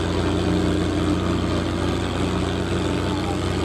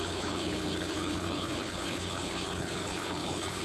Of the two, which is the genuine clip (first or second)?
first